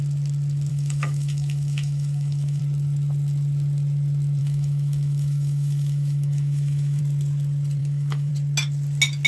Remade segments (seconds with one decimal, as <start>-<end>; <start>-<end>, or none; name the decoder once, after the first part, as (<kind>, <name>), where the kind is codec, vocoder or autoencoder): 0.7-2.6 (autoencoder, DAC-VAE); 4.4-7.0; 7.8-8.3